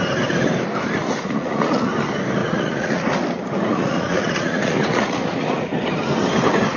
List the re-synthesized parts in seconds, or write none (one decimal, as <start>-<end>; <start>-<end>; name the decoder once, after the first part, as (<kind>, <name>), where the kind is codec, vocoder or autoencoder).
1.0-1.9 (vocoder, Vocos); 2.4-3.0; 3.7-5.8

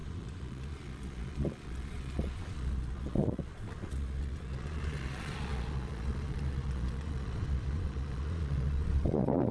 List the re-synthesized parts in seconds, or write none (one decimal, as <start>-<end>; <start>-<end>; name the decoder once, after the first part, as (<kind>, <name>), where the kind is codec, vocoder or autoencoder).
0.0-9.5 (vocoder, Vocos)

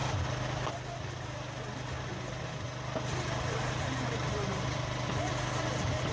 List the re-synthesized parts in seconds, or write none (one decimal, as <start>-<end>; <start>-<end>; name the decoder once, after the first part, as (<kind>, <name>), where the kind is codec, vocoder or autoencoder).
none